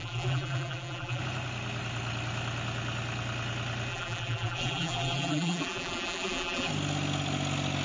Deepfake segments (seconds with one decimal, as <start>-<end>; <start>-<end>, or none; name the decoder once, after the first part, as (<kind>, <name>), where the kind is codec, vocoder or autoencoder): 0.0-1.2 (vocoder, BigVGAN v2); 3.9-6.7